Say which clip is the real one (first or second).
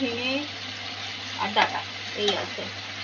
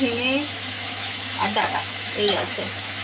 first